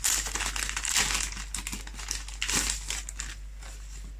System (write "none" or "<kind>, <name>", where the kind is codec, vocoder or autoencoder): none